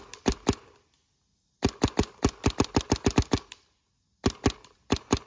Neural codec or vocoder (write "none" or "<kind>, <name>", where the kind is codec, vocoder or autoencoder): none